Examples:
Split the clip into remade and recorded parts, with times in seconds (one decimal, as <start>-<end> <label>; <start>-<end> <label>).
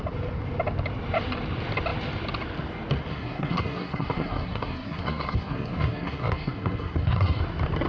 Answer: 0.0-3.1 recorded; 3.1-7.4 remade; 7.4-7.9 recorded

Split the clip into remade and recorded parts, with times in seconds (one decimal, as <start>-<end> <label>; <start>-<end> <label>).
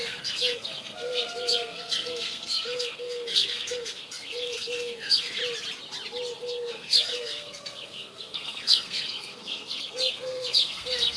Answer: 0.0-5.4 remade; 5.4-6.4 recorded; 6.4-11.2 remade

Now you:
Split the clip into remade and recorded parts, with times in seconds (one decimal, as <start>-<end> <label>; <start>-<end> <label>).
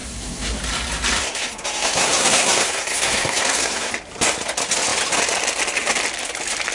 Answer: 0.0-0.6 remade; 0.6-1.2 recorded; 1.2-3.9 remade; 3.9-6.7 recorded